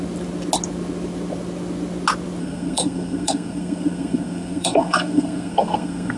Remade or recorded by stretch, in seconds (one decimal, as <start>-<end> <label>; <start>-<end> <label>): 0.0-2.4 recorded; 2.4-6.2 remade